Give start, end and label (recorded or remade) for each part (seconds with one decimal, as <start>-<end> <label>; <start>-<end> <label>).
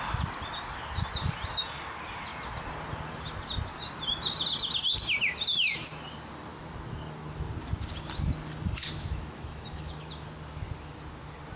0.0-6.5 recorded; 6.5-7.3 remade; 7.3-8.9 recorded; 8.9-10.1 remade; 10.1-11.6 recorded